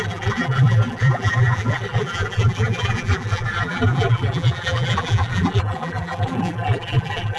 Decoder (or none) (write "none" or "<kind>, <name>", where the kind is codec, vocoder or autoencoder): vocoder, BigVGAN v2